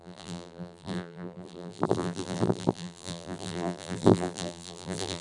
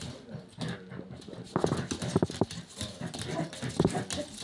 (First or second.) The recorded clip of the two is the second